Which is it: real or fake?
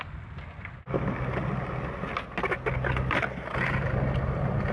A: real